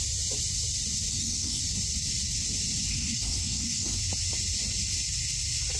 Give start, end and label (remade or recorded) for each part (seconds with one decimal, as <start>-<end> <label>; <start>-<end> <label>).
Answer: 0.0-1.1 recorded; 1.1-1.6 remade; 1.6-2.9 recorded; 2.9-4.0 remade; 4.0-5.8 recorded